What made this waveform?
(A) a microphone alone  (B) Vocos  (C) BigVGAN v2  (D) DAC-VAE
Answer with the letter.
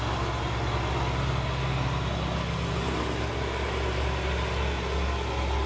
A